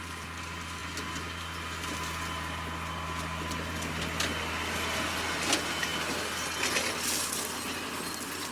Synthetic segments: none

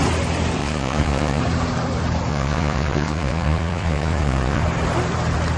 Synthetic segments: 0.6-1.4 (vocoder, Vocos); 2.3-4.6